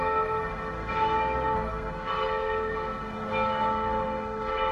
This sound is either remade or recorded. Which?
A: remade